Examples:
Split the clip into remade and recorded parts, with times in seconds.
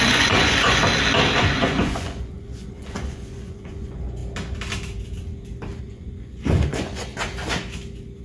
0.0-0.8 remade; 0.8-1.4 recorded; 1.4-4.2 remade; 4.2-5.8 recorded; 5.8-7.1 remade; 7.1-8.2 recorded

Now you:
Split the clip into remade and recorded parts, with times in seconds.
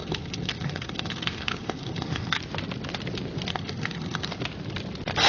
0.0-2.4 remade; 2.4-3.5 recorded; 3.5-4.4 remade; 4.4-5.3 recorded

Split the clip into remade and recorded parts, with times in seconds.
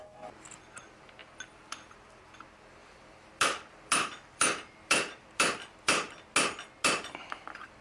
0.0-1.2 recorded; 1.2-2.2 remade; 2.2-2.8 recorded; 2.8-6.2 remade; 6.2-7.8 recorded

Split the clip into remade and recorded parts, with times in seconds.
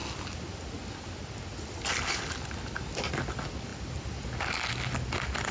0.0-5.5 recorded